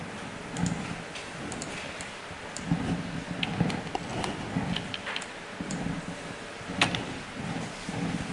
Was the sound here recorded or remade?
recorded